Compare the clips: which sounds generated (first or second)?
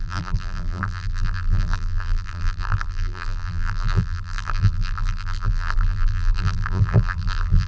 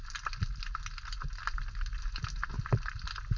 first